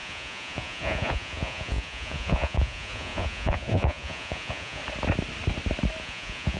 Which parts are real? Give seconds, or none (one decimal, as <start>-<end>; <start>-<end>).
4.8-6.0